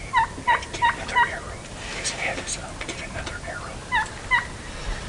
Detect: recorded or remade recorded